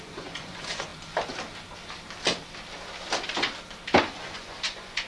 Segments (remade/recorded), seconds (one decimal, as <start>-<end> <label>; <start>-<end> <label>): 0.0-0.9 remade; 0.9-4.0 recorded; 4.0-5.1 remade